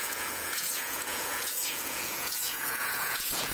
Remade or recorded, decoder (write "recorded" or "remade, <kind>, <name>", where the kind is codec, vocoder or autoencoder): remade, vocoder, Vocos